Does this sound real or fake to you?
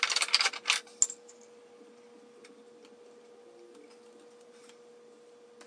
real